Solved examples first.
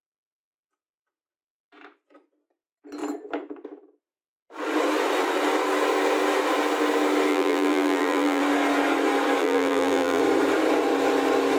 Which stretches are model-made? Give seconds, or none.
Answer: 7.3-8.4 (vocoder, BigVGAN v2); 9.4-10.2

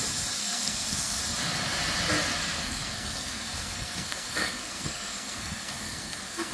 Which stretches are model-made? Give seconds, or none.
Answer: 0.4-1.2 (codec, SNAC); 2.4-6.5